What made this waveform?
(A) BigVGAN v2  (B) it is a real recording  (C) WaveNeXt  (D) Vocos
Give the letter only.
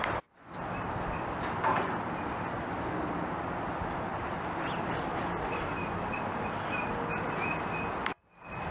B